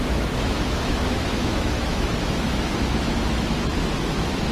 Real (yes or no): no